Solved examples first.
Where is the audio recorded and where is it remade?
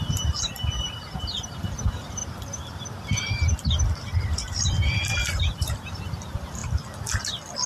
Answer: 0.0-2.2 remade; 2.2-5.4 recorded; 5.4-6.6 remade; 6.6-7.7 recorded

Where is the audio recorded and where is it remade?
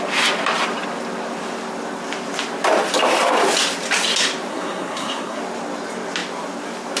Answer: 0.0-4.5 recorded; 4.5-5.4 remade; 5.4-7.0 recorded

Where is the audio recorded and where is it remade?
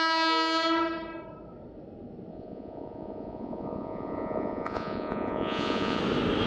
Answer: 0.0-2.3 recorded; 2.3-6.0 remade; 6.0-6.5 recorded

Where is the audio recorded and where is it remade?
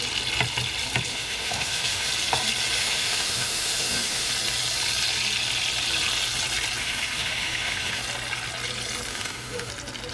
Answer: 0.0-1.1 recorded; 1.1-2.1 remade; 2.1-2.8 recorded; 2.8-4.3 remade; 4.3-6.8 recorded; 6.8-8.0 remade; 8.0-9.1 recorded; 9.1-9.7 remade; 9.7-10.1 recorded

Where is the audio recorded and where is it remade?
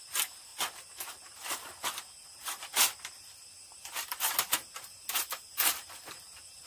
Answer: 0.0-6.7 recorded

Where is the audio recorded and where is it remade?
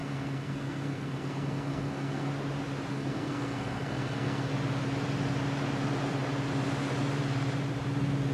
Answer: 0.0-2.3 remade; 2.3-2.9 recorded; 2.9-4.5 remade; 4.5-8.3 recorded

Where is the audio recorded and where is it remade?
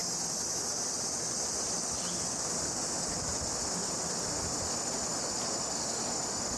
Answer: 0.0-6.6 recorded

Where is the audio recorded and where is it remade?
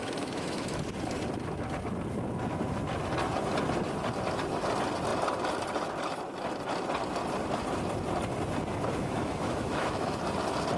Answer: 0.0-0.8 remade; 0.8-9.0 recorded; 9.0-10.2 remade; 10.2-10.8 recorded